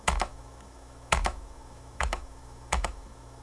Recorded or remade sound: remade